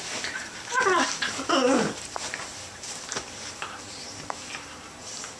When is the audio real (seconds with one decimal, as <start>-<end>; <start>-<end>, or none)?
0.0-2.5; 5.0-5.4